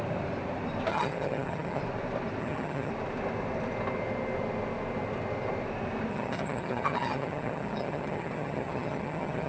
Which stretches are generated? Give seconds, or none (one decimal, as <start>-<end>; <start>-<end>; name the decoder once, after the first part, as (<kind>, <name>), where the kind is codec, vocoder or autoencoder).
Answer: 0.9-1.8 (vocoder, HiFi-GAN); 2.4-2.9; 6.1-9.5